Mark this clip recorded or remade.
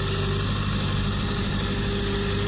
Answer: recorded